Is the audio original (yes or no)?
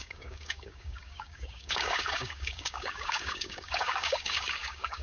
no